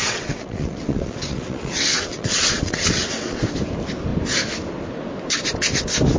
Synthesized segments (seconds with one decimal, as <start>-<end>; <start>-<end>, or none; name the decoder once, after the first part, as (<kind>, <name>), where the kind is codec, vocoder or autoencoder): 0.0-3.4 (vocoder, WaveNeXt)